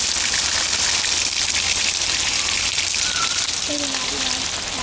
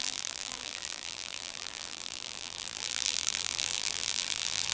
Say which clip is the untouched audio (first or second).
first